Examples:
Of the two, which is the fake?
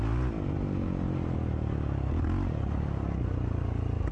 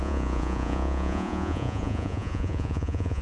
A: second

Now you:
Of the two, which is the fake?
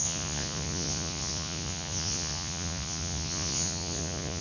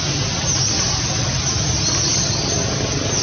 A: first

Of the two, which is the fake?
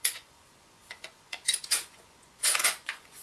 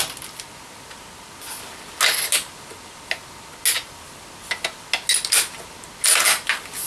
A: first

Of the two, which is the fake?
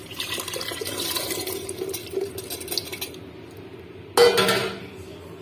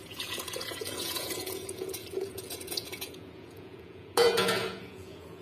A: second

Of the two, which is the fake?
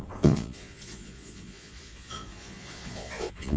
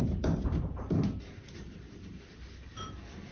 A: first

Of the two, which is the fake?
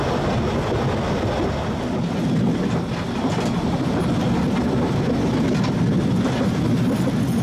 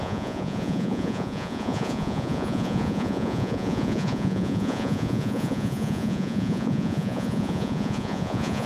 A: second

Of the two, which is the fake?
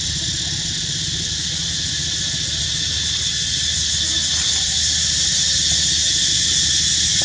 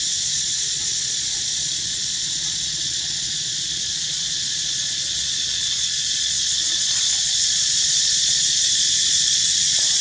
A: second